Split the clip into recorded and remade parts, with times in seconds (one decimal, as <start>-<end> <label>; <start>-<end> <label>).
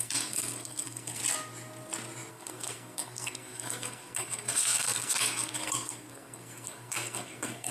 0.0-1.2 remade; 1.2-2.3 recorded; 2.3-7.7 remade